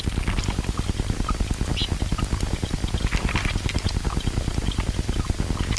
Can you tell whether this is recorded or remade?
recorded